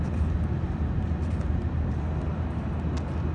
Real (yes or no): yes